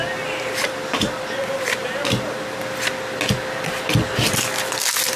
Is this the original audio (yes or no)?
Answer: yes